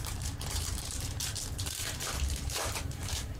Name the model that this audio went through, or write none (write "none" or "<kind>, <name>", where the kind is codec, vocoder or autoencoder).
vocoder, BigVGAN v2